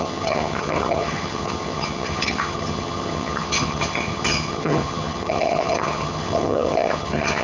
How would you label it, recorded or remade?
remade